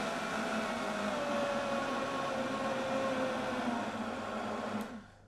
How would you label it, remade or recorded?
recorded